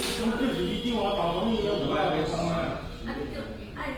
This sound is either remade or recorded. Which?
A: recorded